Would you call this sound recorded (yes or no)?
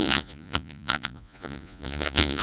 no